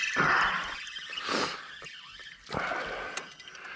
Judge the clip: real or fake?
real